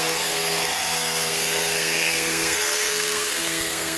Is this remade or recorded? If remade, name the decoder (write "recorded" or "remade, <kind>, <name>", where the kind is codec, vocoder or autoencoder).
remade, codec, SNAC